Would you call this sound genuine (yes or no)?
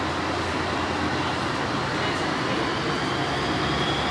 yes